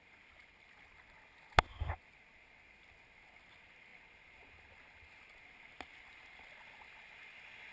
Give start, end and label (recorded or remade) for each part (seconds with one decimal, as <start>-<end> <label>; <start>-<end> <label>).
0.0-7.7 recorded